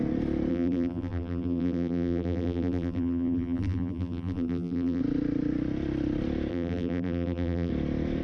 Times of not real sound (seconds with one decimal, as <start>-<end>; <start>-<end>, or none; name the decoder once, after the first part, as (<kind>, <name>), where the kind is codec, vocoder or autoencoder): 0.5-5.0 (vocoder, BigVGAN v2); 6.5-7.7

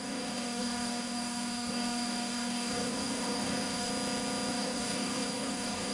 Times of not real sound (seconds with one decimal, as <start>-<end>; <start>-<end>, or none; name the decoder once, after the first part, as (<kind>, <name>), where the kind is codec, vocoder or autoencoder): 0.0-3.9 (codec, DAC); 4.5-5.9

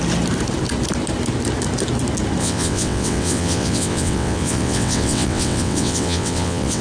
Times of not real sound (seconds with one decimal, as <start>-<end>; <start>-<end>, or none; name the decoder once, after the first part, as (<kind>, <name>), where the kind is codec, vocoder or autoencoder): 2.4-6.8 (vocoder, WaveNeXt)

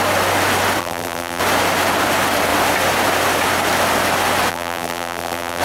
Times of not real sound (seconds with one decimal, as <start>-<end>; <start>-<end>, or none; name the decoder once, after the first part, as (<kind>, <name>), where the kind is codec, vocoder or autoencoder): 0.8-1.4 (vocoder, BigVGAN v2); 4.5-5.6

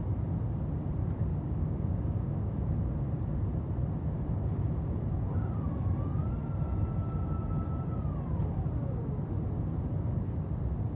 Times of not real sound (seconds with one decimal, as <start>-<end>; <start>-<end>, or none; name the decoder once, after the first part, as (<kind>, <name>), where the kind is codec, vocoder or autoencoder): 1.3-2.6 (codec, DAC)

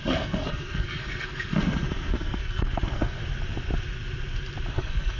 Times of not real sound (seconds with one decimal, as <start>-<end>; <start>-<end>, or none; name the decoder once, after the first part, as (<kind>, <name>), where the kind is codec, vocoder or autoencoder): 0.0-3.2 (codec, SNAC); 4.7-5.2

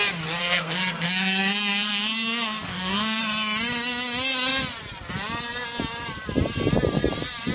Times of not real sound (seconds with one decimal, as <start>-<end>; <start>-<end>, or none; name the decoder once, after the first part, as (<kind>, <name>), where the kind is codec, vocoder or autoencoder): 0.4-3.2 (codec, SNAC)